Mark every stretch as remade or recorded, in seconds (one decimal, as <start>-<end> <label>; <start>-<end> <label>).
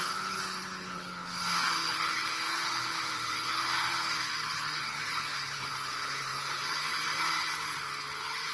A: 0.0-8.5 remade